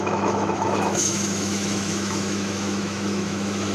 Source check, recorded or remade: remade